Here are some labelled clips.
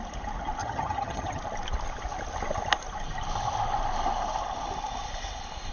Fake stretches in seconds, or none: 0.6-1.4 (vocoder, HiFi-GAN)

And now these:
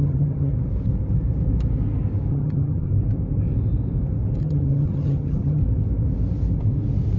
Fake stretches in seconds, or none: 0.0-0.5 (vocoder, HiFi-GAN); 2.3-2.9; 4.4-5.6

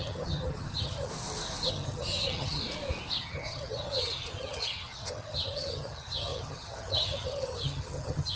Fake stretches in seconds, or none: 0.0-1.1 (vocoder, HiFi-GAN); 1.7-2.6; 3.2-8.4